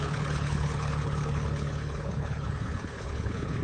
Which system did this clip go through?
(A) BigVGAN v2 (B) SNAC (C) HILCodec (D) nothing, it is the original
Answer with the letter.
C